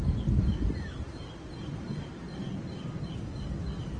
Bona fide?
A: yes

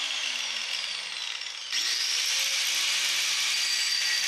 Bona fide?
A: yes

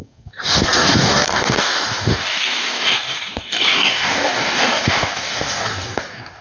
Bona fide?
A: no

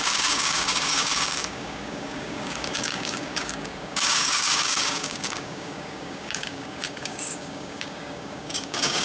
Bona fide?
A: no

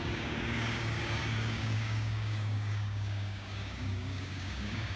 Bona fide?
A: no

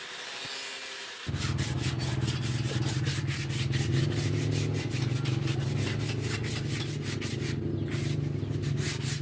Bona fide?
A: yes